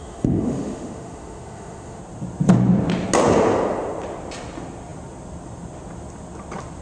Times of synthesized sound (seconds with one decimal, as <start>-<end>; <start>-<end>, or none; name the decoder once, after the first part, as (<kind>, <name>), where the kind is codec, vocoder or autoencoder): 0.0-2.0 (autoencoder, DAC-VAE)